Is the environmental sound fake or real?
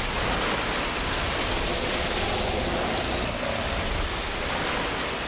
real